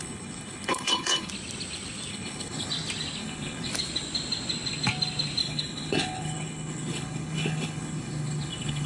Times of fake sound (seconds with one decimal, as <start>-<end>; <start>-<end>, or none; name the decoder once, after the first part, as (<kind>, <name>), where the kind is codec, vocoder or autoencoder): 0.0-1.3 (codec, HILCodec); 2.1-2.7; 3.2-3.7; 5.4-8.9